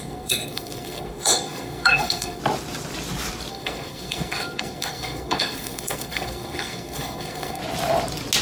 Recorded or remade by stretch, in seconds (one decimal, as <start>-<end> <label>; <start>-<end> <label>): 0.0-2.4 remade; 2.4-3.5 recorded; 3.5-7.6 remade; 7.6-8.4 recorded